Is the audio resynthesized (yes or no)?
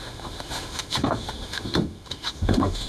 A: yes